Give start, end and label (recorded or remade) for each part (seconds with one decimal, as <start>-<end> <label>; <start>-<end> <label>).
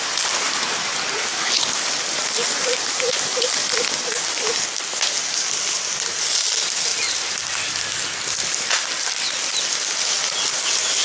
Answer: 0.0-11.0 recorded